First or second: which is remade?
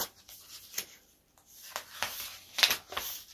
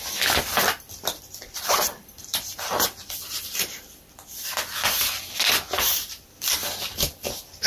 second